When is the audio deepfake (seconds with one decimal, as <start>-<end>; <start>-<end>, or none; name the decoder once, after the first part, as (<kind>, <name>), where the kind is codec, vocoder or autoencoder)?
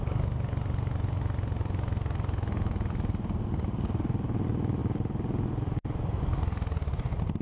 none